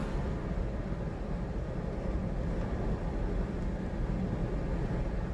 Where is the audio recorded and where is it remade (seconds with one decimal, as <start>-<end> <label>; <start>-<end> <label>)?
0.0-5.3 recorded

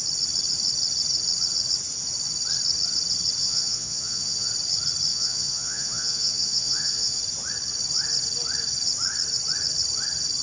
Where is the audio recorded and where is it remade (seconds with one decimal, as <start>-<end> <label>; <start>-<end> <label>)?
0.0-3.4 recorded; 3.4-4.5 remade; 4.5-5.1 recorded; 5.1-7.2 remade; 7.2-10.4 recorded

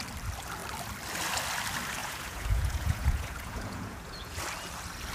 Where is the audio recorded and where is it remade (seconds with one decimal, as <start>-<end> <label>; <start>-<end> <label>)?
0.0-2.0 recorded; 2.0-4.4 remade; 4.4-5.1 recorded

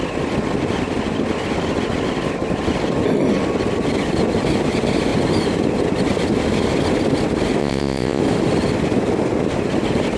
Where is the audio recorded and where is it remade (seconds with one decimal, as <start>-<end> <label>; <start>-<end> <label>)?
0.0-7.6 recorded; 7.6-8.2 remade; 8.2-10.2 recorded

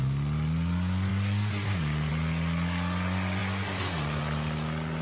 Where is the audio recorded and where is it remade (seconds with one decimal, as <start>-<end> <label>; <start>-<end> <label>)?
0.0-5.0 recorded

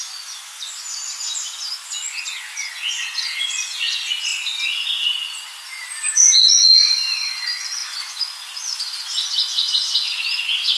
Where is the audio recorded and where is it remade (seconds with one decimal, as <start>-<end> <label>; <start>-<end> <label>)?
0.0-0.7 remade; 0.7-1.7 recorded; 1.7-4.3 remade; 4.3-6.1 recorded; 6.1-10.8 remade

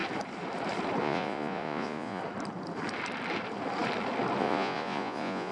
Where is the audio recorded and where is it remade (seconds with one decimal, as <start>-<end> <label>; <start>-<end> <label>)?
0.0-1.0 recorded; 1.0-2.2 remade; 2.2-4.4 recorded; 4.4-5.5 remade